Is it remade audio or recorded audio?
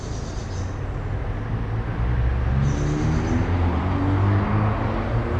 recorded